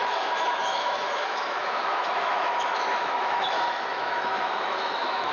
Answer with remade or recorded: remade